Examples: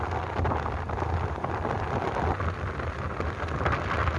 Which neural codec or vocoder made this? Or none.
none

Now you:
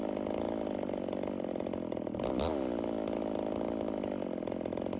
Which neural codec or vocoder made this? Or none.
none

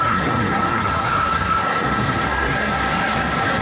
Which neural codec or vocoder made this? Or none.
codec, SNAC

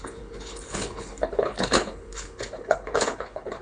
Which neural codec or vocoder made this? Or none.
codec, HILCodec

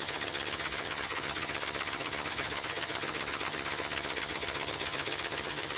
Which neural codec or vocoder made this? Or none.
vocoder, HiFi-GAN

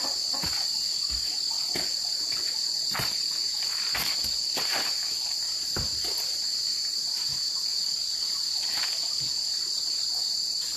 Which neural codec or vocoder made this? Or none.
none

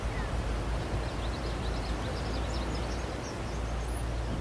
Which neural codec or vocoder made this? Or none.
none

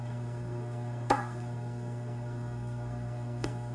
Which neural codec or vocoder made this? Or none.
codec, SNAC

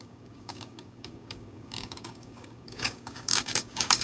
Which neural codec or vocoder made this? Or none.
codec, DAC